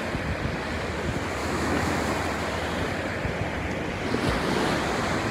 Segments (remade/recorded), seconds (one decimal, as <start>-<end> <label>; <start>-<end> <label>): 0.0-1.4 recorded; 1.4-2.0 remade; 2.0-5.3 recorded